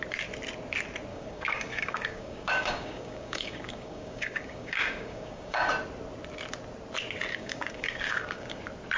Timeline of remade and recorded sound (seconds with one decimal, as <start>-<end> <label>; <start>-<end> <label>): 0.0-1.1 recorded; 1.1-5.7 remade; 5.7-7.3 recorded; 7.3-8.6 remade; 8.6-9.0 recorded